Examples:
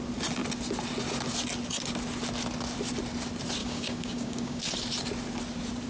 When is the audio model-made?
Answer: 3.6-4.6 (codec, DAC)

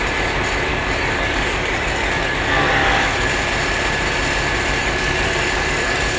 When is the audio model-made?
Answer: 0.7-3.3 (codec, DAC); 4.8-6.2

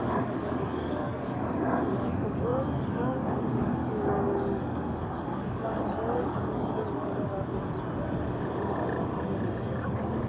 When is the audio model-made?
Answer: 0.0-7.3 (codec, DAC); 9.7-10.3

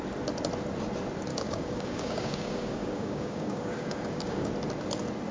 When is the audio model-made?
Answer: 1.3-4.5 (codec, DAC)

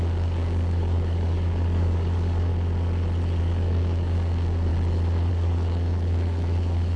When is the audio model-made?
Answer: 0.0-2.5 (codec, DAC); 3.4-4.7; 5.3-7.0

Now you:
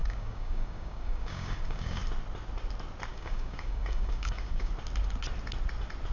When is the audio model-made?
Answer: 0.0-2.0 (codec, DAC); 3.1-4.7